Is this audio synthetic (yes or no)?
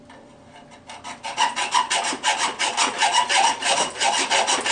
no